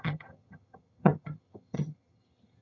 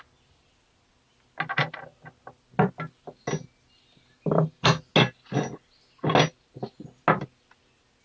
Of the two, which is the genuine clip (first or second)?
second